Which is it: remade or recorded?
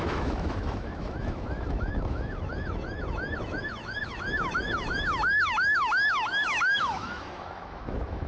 remade